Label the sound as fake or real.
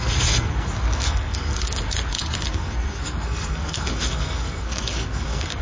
fake